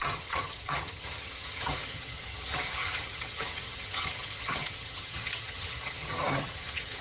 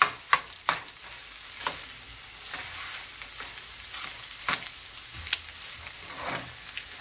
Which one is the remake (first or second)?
first